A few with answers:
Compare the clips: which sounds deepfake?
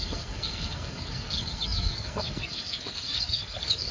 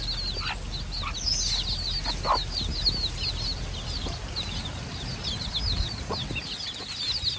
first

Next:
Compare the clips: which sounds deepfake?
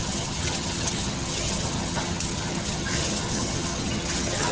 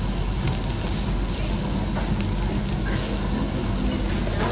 first